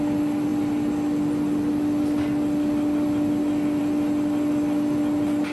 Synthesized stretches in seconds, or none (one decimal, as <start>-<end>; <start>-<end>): none